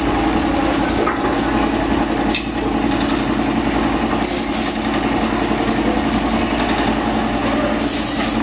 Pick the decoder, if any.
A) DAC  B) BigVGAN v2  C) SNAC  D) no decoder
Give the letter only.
D